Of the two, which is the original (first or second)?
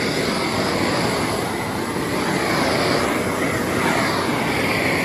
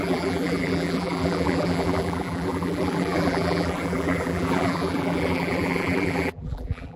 first